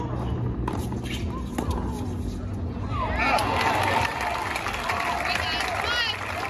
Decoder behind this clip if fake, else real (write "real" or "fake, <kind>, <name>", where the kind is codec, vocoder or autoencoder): real